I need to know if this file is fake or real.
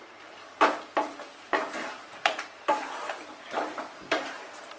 fake